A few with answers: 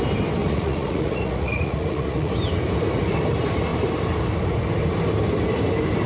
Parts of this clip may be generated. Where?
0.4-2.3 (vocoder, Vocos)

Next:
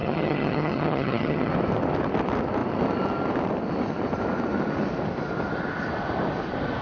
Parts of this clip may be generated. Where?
0.0-1.5 (vocoder, HiFi-GAN)

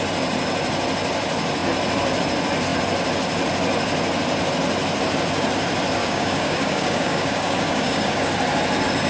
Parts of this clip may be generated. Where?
6.0-8.3 (codec, DAC)

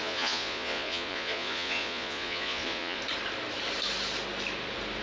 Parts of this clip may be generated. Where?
0.0-3.0 (vocoder, Vocos)

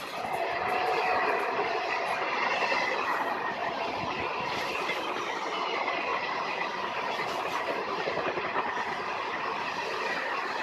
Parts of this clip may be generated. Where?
3.6-5.1 (vocoder, BigVGAN v2); 6.1-8.4

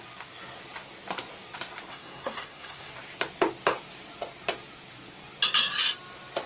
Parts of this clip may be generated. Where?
1.9-2.9 (codec, SNAC)